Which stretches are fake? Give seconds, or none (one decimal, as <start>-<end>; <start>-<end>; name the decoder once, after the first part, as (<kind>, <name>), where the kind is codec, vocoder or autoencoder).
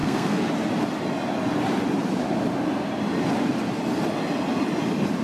0.0-0.5 (codec, SNAC)